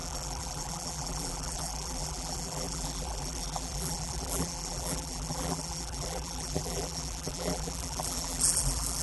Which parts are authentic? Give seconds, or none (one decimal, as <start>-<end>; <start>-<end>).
none